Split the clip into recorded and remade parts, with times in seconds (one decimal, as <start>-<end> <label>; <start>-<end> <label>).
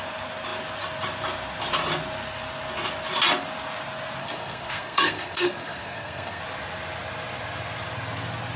0.0-4.2 recorded; 4.2-6.4 remade; 6.4-8.6 recorded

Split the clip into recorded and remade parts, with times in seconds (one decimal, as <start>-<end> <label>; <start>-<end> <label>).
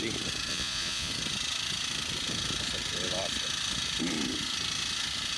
0.0-0.5 recorded; 0.5-1.1 remade; 1.1-5.4 recorded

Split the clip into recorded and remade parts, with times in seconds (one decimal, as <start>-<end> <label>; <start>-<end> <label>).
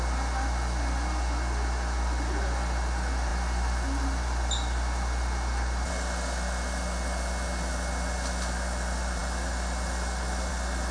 0.0-10.9 recorded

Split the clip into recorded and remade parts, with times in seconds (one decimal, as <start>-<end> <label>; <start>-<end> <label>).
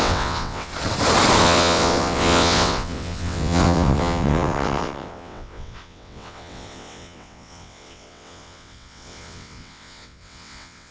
0.0-0.7 remade; 0.7-1.4 recorded; 1.4-10.9 remade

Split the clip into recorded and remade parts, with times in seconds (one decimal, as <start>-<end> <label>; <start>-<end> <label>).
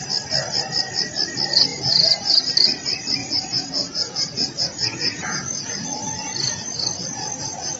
0.0-1.7 recorded; 1.7-2.5 remade; 2.5-3.2 recorded; 3.2-5.7 remade; 5.7-7.8 recorded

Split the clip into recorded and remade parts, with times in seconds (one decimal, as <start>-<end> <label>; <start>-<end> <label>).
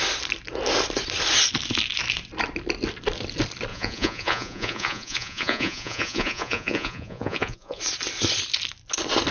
0.0-3.7 recorded; 3.7-7.8 remade; 7.8-9.3 recorded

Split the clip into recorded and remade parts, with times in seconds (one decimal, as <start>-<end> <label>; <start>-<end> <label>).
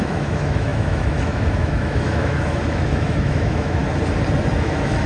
0.0-3.8 remade; 3.8-4.5 recorded; 4.5-5.1 remade